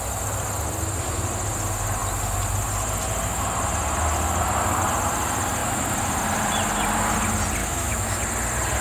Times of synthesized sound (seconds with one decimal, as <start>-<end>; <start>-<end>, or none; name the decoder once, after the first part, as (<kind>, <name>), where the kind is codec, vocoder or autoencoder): 7.6-8.2 (autoencoder, DAC-VAE)